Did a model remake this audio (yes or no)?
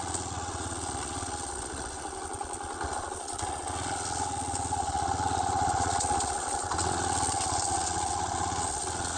yes